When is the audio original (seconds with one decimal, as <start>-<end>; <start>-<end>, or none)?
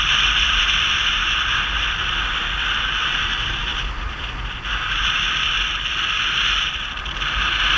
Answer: 0.0-7.8